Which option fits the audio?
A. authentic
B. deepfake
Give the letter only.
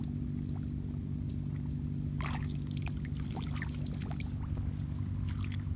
A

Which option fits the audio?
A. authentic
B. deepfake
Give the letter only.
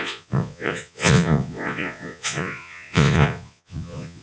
B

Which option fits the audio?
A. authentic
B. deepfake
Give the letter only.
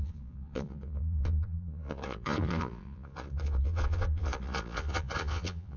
B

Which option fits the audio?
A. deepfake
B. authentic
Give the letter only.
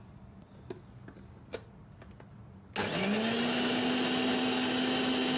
B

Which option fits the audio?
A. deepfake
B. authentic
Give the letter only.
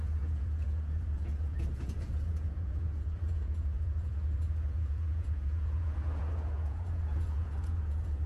A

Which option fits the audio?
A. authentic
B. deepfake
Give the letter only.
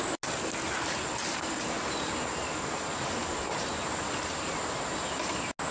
A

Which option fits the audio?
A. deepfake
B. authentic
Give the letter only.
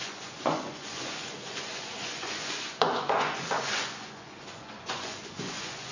A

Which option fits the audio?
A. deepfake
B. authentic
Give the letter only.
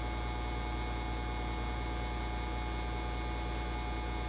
B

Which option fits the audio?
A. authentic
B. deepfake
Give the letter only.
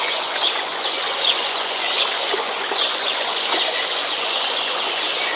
B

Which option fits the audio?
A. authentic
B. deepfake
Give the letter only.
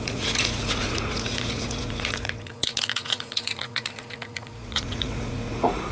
B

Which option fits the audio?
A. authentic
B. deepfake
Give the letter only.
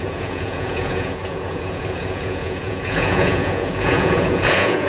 B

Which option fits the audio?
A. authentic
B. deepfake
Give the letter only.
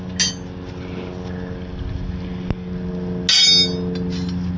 A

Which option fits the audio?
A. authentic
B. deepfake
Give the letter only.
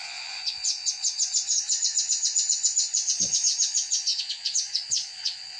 B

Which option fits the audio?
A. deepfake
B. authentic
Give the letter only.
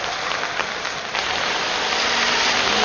B